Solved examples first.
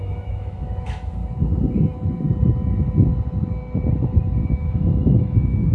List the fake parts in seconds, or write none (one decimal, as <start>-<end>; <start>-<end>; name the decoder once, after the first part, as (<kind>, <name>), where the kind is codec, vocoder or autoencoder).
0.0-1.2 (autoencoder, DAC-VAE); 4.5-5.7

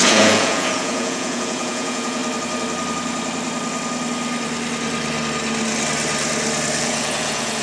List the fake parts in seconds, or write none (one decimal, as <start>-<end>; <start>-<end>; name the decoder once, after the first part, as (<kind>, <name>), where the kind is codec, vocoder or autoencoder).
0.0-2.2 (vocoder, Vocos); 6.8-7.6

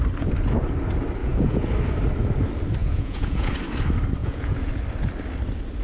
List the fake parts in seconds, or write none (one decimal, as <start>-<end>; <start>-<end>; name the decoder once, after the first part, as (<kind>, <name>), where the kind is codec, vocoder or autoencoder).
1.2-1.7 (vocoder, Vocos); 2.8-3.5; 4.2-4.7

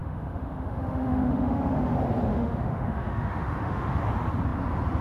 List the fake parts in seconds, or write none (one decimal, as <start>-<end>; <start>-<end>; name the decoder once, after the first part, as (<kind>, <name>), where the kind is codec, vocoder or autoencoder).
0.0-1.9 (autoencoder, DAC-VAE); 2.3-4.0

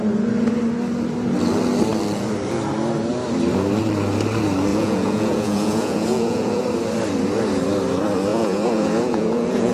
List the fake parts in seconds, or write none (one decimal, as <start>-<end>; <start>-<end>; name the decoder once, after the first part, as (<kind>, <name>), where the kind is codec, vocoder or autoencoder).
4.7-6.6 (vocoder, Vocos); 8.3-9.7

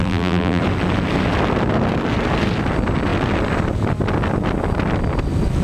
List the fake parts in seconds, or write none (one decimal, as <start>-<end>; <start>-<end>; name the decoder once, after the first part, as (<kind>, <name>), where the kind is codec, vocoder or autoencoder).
0.0-0.6 (vocoder, BigVGAN v2)